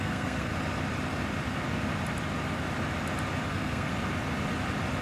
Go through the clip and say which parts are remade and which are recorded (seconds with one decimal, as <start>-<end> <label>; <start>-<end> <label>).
0.0-0.5 remade; 0.5-3.5 recorded; 3.5-3.9 remade; 3.9-5.0 recorded